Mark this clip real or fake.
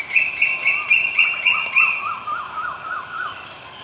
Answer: real